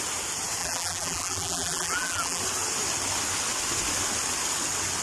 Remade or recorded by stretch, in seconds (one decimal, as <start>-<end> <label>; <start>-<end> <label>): 0.0-0.6 recorded; 0.6-2.4 remade; 2.4-5.0 recorded